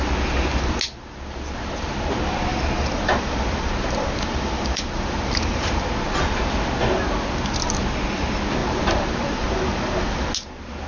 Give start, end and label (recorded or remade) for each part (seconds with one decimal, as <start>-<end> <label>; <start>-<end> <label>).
0.0-2.5 recorded; 2.5-5.8 remade; 5.8-8.6 recorded; 8.6-10.3 remade; 10.3-10.9 recorded